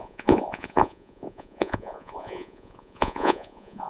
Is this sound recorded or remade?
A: remade